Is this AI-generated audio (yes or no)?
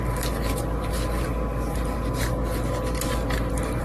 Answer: no